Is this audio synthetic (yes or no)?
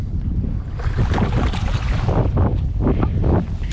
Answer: no